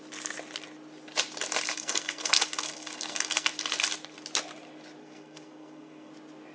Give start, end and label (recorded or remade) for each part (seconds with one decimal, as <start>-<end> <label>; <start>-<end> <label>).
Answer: 0.0-1.7 recorded; 1.7-3.5 remade; 3.5-5.0 recorded; 5.0-6.1 remade; 6.1-6.5 recorded